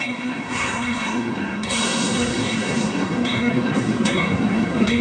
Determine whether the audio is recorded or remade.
remade